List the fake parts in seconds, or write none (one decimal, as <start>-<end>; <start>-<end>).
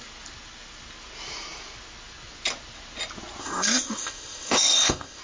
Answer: 3.4-5.2